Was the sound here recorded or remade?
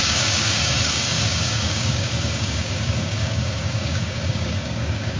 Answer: remade